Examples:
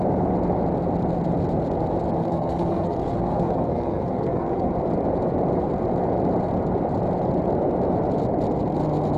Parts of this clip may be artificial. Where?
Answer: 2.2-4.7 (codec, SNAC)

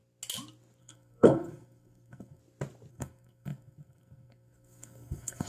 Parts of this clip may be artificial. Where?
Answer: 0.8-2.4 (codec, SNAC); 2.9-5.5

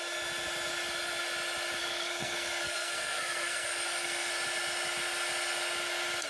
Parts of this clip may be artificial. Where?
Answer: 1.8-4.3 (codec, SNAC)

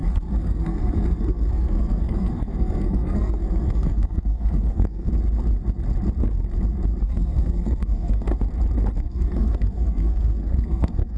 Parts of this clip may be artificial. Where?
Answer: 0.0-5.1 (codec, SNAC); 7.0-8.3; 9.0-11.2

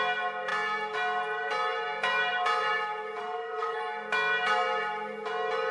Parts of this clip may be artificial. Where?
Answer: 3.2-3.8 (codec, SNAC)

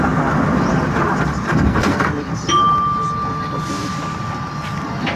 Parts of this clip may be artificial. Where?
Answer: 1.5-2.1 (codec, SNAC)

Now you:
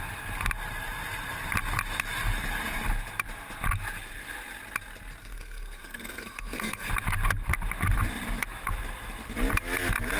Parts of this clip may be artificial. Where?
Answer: 5.2-6.9 (codec, SNAC)